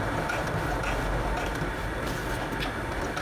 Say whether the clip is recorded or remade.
recorded